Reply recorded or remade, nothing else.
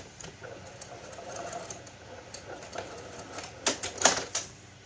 recorded